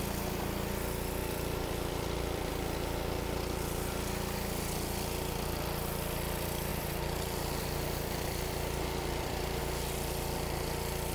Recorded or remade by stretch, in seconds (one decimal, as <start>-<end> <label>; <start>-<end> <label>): 0.0-1.2 recorded; 1.2-2.5 remade; 2.5-6.7 recorded; 6.7-9.6 remade; 9.6-11.1 recorded